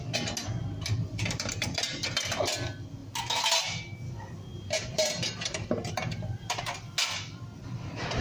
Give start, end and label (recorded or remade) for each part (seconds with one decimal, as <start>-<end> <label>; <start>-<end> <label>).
0.0-0.4 recorded; 0.4-2.3 remade; 2.3-4.5 recorded; 4.5-6.6 remade; 6.6-8.2 recorded